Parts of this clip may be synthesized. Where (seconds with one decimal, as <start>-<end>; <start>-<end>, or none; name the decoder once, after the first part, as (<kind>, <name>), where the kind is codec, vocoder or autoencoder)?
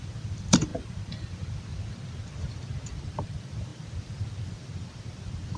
0.0-0.7 (vocoder, BigVGAN v2); 3.0-5.6